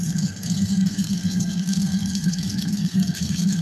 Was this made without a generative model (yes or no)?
no